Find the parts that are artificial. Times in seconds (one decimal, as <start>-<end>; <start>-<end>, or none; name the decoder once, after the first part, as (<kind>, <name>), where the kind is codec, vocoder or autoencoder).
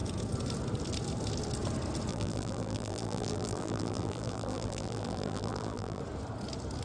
2.1-6.0 (vocoder, BigVGAN v2)